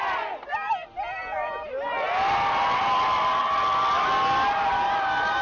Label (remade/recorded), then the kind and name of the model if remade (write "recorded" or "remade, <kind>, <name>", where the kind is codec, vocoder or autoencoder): recorded